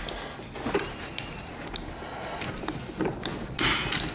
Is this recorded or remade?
recorded